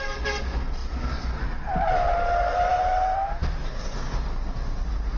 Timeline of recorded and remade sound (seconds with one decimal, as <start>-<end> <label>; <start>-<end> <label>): 0.0-5.2 recorded

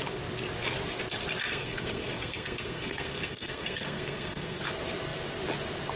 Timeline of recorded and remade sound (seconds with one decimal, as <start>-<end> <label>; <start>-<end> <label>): 0.0-1.5 recorded; 1.5-4.6 remade; 4.6-6.0 recorded

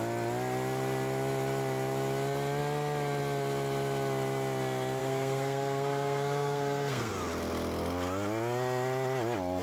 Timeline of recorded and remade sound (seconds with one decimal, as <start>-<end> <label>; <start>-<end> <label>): 0.0-5.0 recorded; 5.0-7.1 remade; 7.1-9.6 recorded

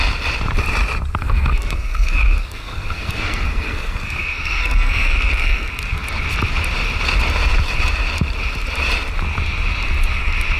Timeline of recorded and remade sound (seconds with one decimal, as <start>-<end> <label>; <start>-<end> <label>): 0.0-1.2 recorded; 1.2-5.7 remade; 5.7-10.6 recorded